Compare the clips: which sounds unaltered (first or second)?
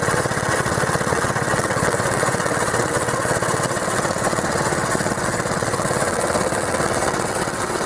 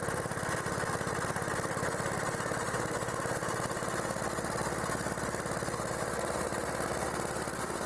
second